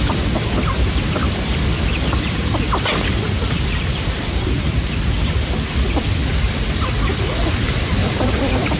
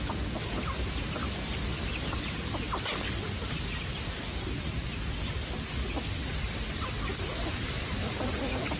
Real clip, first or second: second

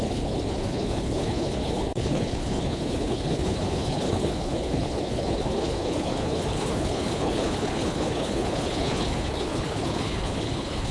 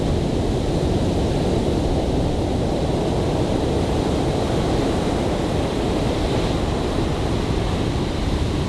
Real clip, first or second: second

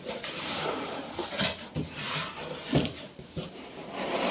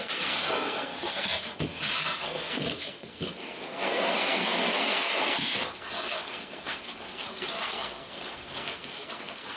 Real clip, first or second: first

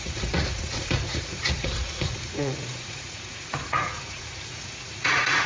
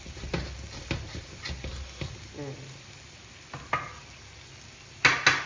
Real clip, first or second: second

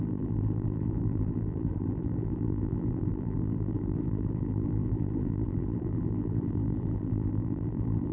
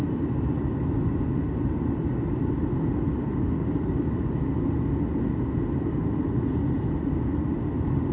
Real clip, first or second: second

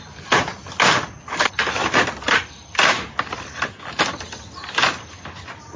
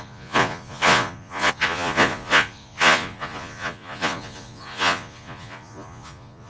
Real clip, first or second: first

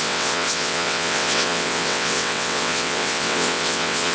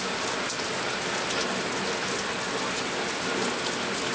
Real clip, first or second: second